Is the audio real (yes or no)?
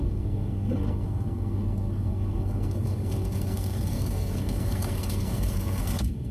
no